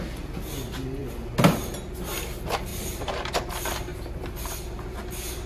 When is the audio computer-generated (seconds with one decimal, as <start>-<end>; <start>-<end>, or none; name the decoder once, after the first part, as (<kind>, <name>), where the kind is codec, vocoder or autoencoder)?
2.7-3.3 (vocoder, BigVGAN v2)